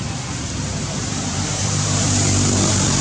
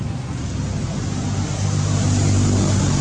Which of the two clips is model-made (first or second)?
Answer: first